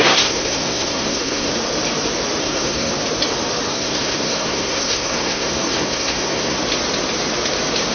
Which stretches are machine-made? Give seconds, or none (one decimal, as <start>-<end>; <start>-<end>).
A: 0.0-1.5; 2.4-2.9; 3.7-6.6